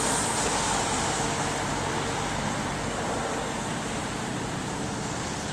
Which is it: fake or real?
real